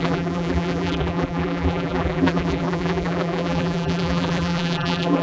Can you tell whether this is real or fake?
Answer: fake